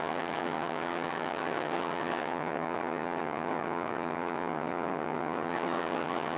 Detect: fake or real fake